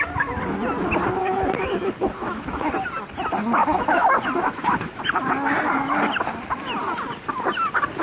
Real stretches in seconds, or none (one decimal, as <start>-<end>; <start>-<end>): 0.0-1.2; 2.7-3.6; 5.0-8.0

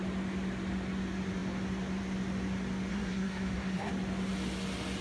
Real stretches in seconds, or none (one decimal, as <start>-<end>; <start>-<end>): 0.0-2.9; 3.9-5.0

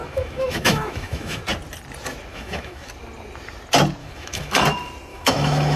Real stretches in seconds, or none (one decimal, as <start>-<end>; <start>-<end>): 1.4-2.3; 2.9-4.0; 4.6-5.1